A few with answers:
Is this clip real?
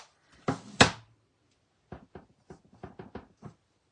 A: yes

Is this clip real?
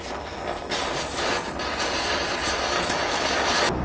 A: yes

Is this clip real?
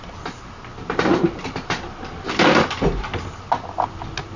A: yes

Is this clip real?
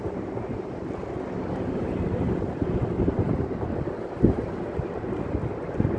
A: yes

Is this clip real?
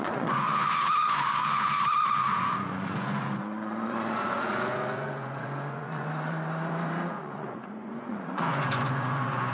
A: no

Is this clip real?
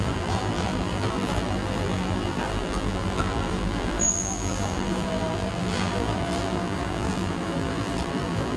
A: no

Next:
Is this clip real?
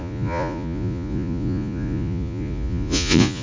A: no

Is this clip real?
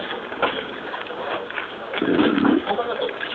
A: no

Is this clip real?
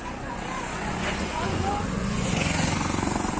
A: no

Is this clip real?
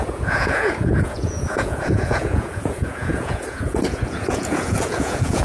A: no